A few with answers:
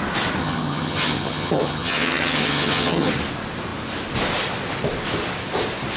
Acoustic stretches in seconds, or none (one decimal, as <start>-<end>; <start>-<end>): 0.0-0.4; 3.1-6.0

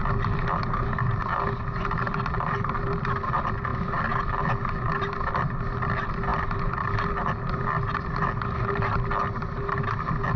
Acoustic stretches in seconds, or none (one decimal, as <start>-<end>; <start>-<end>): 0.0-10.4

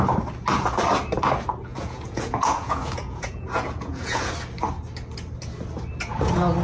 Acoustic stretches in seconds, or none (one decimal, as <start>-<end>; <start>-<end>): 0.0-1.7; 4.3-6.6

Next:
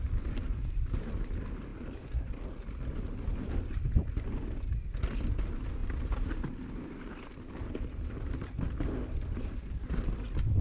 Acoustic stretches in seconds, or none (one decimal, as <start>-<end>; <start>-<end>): 0.0-10.6

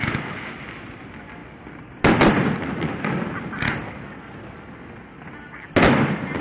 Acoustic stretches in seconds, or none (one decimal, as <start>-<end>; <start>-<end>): 0.0-6.4

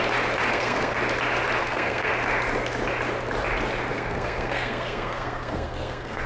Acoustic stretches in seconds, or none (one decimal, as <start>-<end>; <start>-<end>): 0.0-0.5; 1.0-1.6; 2.1-3.9

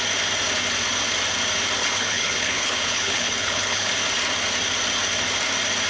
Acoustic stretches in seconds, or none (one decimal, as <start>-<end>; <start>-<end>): 0.0-1.8; 3.9-5.9